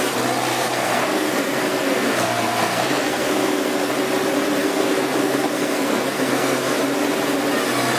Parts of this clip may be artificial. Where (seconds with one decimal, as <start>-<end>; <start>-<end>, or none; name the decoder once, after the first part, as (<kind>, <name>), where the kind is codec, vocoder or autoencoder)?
0.5-3.9 (codec, SNAC); 4.6-6.8